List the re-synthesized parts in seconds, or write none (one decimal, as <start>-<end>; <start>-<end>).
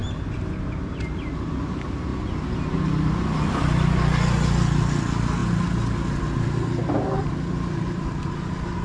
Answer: none